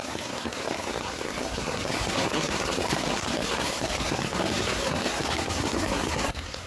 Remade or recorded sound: remade